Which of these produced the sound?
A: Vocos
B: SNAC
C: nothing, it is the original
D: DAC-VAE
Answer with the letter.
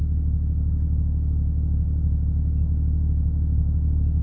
C